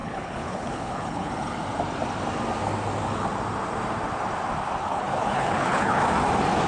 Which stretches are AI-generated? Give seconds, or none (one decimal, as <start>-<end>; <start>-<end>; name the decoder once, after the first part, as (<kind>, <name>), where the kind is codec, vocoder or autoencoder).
0.0-1.3 (codec, HILCodec); 4.8-6.0